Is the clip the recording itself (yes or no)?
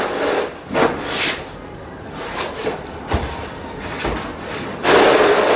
yes